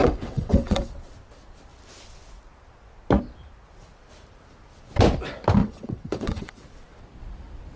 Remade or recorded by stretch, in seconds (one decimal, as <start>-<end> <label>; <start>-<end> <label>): 0.0-0.9 remade; 0.9-5.6 recorded; 5.6-6.6 remade; 6.6-7.8 recorded